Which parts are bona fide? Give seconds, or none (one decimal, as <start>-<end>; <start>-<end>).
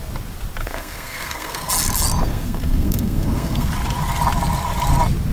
0.0-0.6; 1.7-2.2; 3.7-5.3